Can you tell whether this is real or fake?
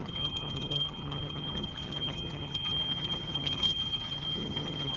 fake